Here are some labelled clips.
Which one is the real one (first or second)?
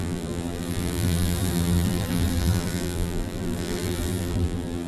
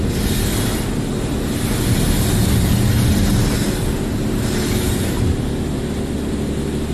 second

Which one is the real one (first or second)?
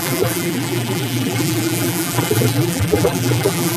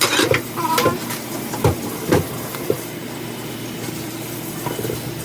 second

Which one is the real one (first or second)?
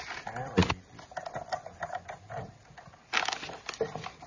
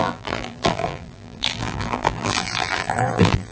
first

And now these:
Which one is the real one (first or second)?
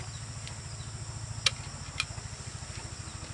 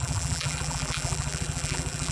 first